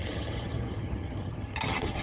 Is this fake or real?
fake